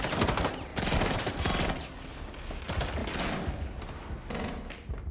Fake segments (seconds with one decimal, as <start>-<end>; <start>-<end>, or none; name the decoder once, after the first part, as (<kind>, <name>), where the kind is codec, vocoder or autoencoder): 0.7-1.6 (vocoder, BigVGAN v2); 3.0-3.5